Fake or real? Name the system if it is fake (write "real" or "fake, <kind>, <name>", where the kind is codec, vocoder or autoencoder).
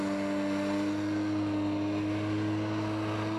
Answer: real